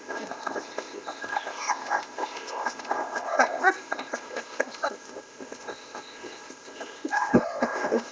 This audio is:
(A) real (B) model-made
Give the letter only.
B